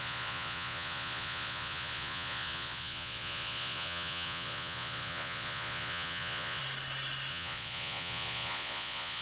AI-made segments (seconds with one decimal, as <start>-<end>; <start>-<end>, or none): 0.0-6.6; 7.3-9.2